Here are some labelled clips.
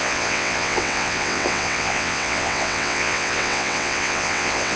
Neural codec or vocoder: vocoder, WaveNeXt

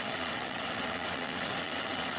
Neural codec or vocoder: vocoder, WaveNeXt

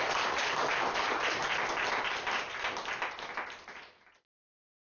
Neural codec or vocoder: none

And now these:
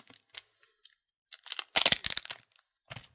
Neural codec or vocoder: none